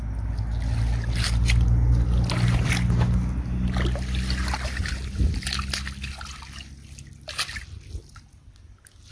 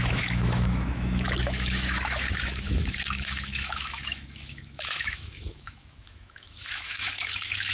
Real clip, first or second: first